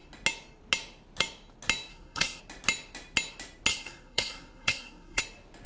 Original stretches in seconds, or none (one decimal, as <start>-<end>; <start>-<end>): 0.0-1.9; 2.4-3.7; 5.2-5.7